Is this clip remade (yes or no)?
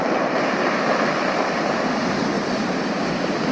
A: no